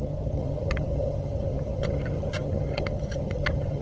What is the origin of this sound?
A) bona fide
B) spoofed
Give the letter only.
B